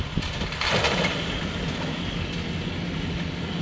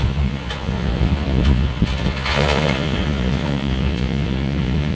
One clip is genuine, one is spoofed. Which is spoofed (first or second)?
second